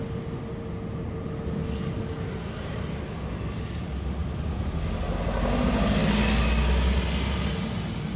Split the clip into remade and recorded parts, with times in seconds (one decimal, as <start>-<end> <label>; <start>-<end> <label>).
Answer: 0.0-8.2 recorded

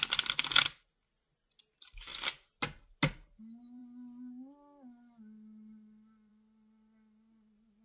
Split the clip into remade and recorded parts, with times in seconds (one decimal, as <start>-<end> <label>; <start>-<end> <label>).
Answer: 0.0-7.8 recorded

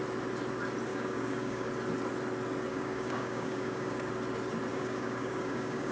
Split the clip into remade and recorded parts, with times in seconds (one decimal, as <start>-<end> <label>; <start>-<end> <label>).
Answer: 0.0-0.9 recorded; 0.9-1.7 remade; 1.7-2.7 recorded; 2.7-4.1 remade; 4.1-4.7 recorded; 4.7-5.9 remade

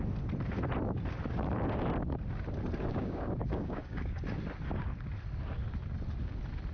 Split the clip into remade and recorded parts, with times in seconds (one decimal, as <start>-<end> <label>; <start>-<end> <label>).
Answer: 0.0-2.9 recorded; 2.9-4.2 remade; 4.2-6.7 recorded

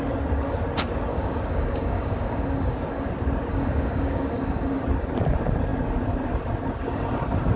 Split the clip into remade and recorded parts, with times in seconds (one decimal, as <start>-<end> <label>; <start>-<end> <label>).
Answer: 0.0-1.1 recorded; 1.1-3.1 remade; 3.1-3.5 recorded; 3.5-4.8 remade; 4.8-7.6 recorded

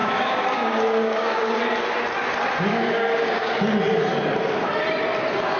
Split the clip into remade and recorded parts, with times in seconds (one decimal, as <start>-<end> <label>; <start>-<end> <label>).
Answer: 0.0-1.6 remade; 1.6-2.7 recorded; 2.7-3.5 remade; 3.5-5.6 recorded